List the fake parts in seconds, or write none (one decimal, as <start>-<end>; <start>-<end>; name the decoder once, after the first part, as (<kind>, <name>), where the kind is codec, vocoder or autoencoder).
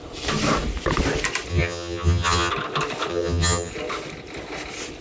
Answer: 1.5-2.5 (vocoder, HiFi-GAN); 3.1-3.7